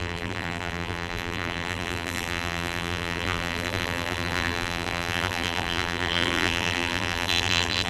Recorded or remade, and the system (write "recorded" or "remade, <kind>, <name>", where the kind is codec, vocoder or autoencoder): remade, vocoder, BigVGAN v2